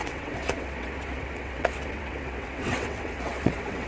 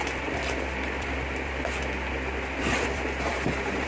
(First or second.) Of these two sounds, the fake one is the first